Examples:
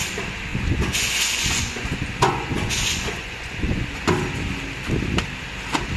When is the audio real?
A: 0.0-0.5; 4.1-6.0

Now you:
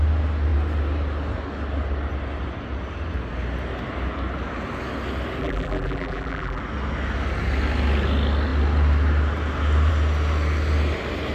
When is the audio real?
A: 0.0-5.4; 6.6-11.3

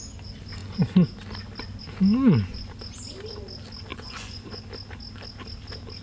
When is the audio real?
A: 0.0-3.9; 4.6-6.0

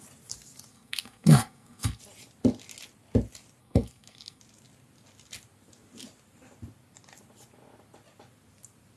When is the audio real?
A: 0.0-0.7; 2.0-3.6; 4.4-9.0

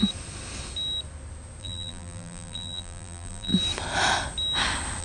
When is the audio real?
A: 0.0-1.6; 3.5-5.0